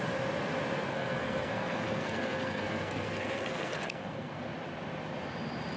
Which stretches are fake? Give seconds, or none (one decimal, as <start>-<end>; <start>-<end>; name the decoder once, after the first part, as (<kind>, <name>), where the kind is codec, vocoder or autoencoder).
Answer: 0.9-4.4 (codec, SNAC)